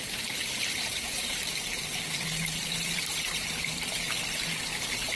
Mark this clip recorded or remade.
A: remade